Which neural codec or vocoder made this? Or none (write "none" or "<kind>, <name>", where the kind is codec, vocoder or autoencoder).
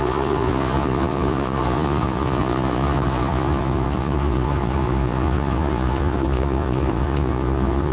vocoder, Vocos